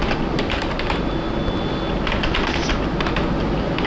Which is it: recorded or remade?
recorded